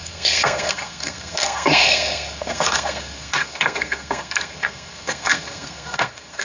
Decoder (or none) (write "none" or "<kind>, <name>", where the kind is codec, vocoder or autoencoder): codec, SNAC